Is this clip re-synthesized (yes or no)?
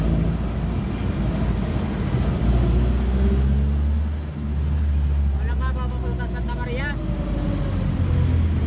no